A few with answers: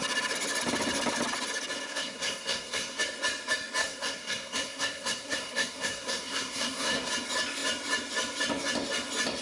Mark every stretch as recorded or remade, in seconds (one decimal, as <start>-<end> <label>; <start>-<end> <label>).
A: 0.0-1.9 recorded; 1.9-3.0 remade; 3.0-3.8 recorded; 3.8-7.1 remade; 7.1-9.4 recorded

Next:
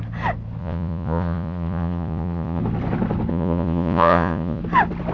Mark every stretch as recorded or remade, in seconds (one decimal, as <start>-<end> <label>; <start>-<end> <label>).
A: 0.0-0.6 recorded; 0.6-2.6 remade; 2.6-3.3 recorded; 3.3-4.6 remade; 4.6-5.1 recorded

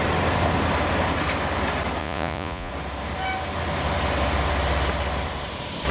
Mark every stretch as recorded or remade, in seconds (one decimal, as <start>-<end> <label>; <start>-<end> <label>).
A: 0.0-2.0 recorded; 2.0-2.7 remade; 2.7-5.9 recorded

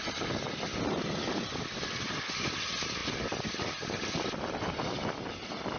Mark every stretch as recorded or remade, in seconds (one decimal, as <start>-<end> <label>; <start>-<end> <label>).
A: 0.0-5.8 recorded

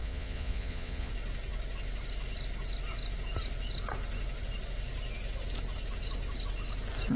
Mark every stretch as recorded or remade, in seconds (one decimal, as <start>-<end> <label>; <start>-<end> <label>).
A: 0.0-1.1 remade; 1.1-7.2 recorded